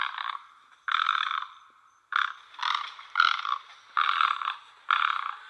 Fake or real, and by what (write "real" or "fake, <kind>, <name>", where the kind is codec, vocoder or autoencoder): real